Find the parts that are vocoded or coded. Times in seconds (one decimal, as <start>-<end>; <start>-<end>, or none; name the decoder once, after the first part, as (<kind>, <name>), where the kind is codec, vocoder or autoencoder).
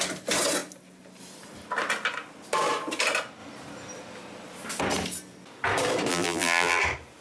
6.1-6.8 (vocoder, BigVGAN v2)